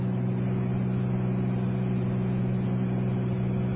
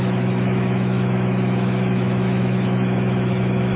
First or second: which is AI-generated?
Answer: second